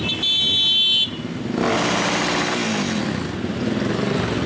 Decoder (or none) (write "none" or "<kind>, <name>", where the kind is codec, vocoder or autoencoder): none